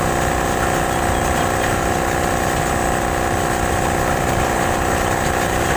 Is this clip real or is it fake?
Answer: real